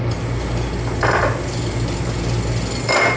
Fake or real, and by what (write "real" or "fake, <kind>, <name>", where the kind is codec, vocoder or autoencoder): real